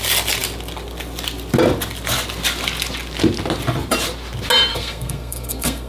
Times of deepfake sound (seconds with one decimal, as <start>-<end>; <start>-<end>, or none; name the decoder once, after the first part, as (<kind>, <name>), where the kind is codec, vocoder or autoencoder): 4.7-5.9 (codec, SNAC)